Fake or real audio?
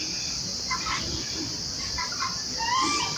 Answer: real